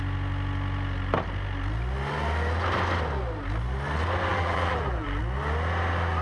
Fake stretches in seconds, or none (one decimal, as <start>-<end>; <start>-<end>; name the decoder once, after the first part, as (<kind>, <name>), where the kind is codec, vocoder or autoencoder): 4.3-5.2 (vocoder, BigVGAN v2)